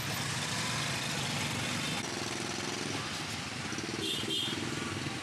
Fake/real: real